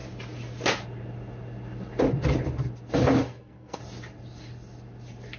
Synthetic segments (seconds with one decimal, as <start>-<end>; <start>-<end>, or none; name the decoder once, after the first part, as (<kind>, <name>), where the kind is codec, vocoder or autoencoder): 3.2-3.8 (codec, SNAC)